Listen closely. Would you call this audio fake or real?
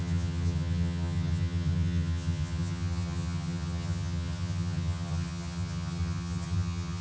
fake